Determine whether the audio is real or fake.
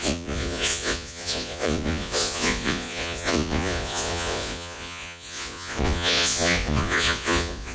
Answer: fake